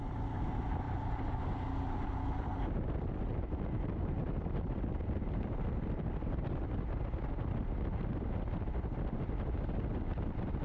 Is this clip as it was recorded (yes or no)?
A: yes